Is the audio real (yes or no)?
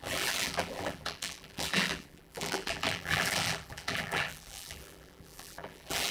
no